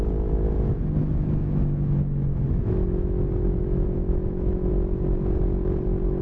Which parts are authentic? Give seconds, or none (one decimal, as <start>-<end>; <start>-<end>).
0.0-1.0; 4.7-6.2